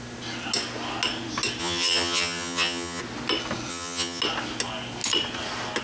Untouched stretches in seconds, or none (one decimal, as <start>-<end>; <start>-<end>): 0.0-1.6; 3.0-3.7; 4.2-5.8